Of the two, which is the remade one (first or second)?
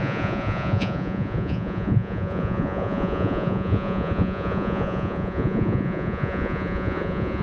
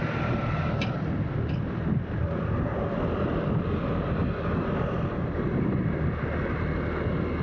first